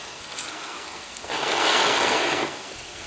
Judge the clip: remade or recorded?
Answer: remade